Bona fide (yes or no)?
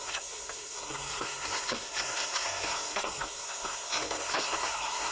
no